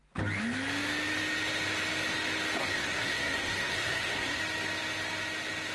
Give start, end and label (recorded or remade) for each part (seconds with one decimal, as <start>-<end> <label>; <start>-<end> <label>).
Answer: 0.0-2.6 recorded; 2.6-4.4 remade; 4.4-5.7 recorded